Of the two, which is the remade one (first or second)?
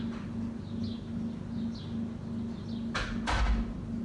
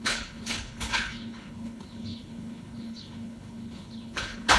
second